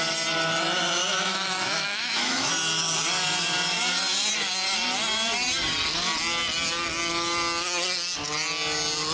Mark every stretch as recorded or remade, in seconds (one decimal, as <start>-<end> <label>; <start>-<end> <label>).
0.0-1.0 recorded; 1.0-2.5 remade; 2.5-9.1 recorded